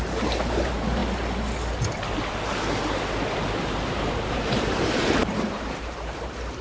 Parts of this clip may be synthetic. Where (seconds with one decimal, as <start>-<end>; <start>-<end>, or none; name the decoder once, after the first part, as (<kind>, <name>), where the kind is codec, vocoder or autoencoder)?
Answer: 0.0-1.0 (vocoder, BigVGAN v2); 2.5-6.6